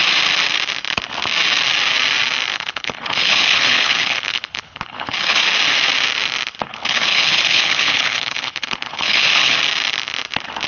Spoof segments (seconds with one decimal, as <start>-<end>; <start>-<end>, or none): 2.5-5.4; 6.7-9.6